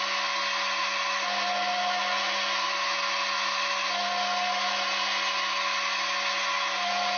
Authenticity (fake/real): real